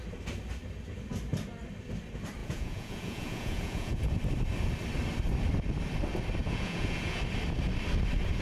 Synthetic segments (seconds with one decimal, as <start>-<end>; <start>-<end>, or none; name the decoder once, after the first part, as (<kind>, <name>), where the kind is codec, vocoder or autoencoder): 2.4-4.1 (vocoder, Vocos); 6.4-7.2